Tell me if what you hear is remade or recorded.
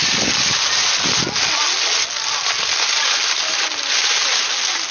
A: recorded